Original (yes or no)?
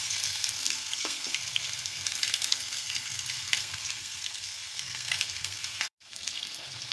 no